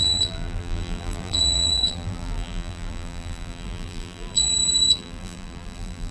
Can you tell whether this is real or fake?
fake